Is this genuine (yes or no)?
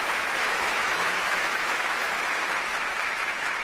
no